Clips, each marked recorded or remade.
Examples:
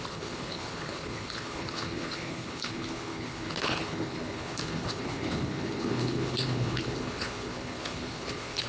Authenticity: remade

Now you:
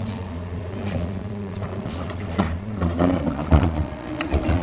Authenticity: remade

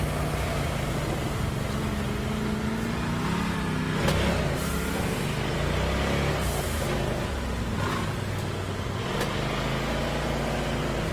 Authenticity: recorded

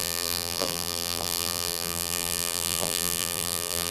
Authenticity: remade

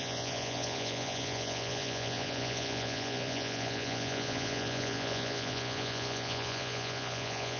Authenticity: remade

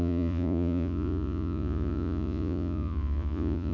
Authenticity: remade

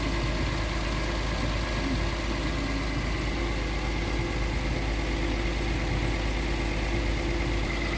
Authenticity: recorded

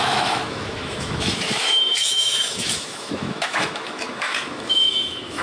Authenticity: remade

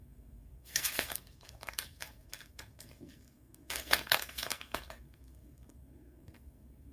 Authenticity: remade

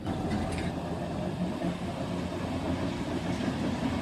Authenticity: recorded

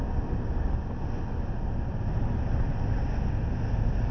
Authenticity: recorded